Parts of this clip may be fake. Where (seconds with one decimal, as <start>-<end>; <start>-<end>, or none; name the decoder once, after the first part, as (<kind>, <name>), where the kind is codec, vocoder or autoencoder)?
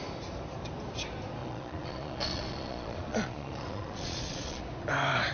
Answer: 1.4-4.6 (vocoder, Vocos)